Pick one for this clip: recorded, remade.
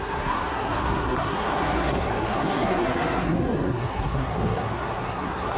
remade